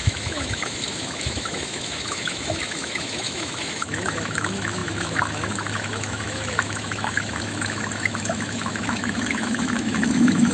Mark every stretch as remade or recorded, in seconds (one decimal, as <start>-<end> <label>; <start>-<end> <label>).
0.0-10.5 remade